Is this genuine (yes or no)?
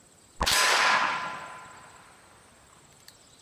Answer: yes